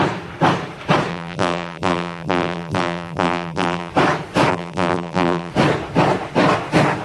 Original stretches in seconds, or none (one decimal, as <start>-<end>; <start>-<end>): 0.0-1.1; 3.9-4.5; 5.5-7.0